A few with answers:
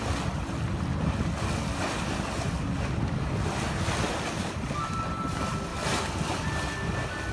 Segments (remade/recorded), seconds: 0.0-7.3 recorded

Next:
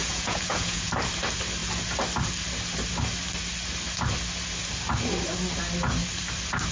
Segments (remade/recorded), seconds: 0.0-0.9 remade; 0.9-6.7 recorded

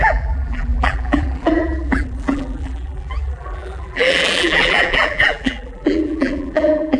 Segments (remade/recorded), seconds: 0.0-7.0 remade